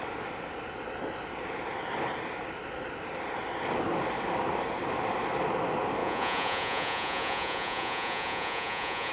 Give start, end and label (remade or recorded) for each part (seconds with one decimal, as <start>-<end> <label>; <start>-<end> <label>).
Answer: 0.0-6.0 recorded; 6.0-9.1 remade